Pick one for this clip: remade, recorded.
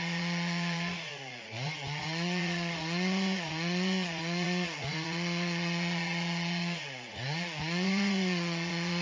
remade